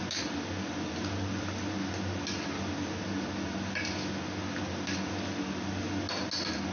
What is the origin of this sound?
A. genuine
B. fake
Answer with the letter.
A